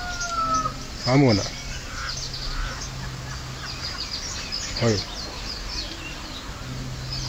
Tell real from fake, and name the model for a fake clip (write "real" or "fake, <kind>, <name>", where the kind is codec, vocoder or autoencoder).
real